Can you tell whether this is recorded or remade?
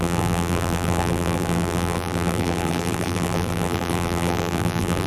remade